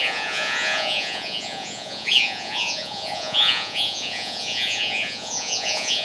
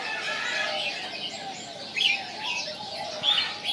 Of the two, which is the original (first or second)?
second